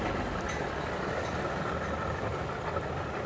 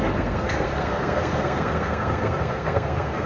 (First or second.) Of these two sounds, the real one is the first